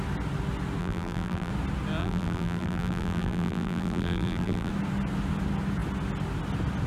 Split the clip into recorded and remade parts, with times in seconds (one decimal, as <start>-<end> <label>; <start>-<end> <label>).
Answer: 0.0-0.8 recorded; 0.8-1.5 remade; 1.5-2.0 recorded; 2.0-4.7 remade; 4.7-6.9 recorded